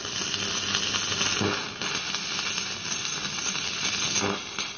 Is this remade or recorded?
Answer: recorded